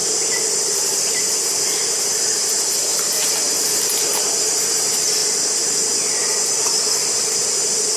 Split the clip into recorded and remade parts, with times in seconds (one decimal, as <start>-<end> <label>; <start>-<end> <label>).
0.0-1.0 recorded; 1.0-8.0 remade